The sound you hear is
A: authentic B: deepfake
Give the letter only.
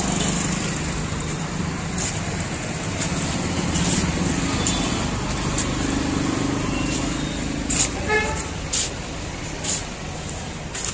A